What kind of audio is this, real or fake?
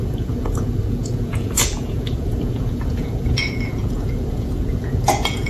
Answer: fake